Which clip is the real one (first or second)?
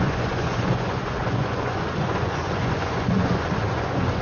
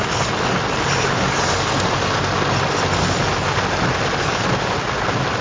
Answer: second